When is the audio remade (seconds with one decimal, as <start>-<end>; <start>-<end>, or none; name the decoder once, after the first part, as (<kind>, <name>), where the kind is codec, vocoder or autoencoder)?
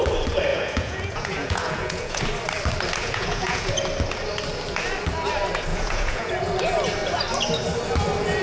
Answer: 0.5-2.2 (vocoder, Vocos); 3.0-3.7; 5.7-6.3